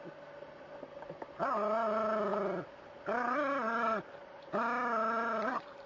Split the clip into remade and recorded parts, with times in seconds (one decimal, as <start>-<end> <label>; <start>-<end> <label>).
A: 0.0-5.9 recorded